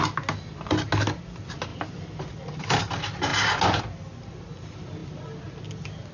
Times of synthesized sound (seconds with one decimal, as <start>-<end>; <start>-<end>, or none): none